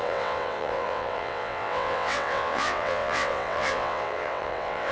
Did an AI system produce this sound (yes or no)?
yes